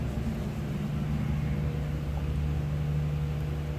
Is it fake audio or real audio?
real